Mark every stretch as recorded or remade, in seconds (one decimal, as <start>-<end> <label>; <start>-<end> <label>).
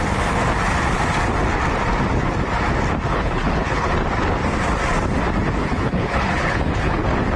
0.0-3.1 recorded; 3.1-3.9 remade; 3.9-5.6 recorded; 5.6-7.0 remade; 7.0-7.4 recorded